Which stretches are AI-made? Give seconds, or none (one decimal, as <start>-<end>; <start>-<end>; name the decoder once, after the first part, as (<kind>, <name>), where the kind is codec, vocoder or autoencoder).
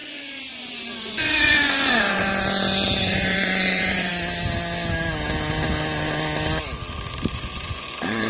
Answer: 0.0-2.3 (vocoder, Vocos); 3.0-4.1; 7.3-8.3